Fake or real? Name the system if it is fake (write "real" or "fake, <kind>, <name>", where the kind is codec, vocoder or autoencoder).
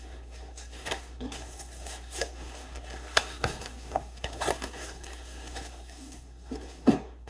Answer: fake, codec, SNAC